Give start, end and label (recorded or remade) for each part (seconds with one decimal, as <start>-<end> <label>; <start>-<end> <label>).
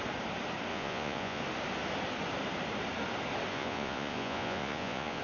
0.0-0.7 recorded; 0.7-1.4 remade; 1.4-3.5 recorded; 3.5-5.2 remade